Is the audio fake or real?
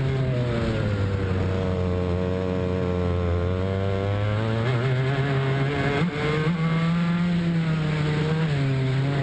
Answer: real